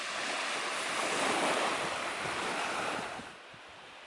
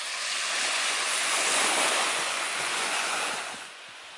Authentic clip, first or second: first